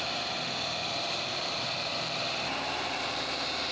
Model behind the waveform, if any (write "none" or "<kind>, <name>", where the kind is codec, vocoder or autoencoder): vocoder, BigVGAN v2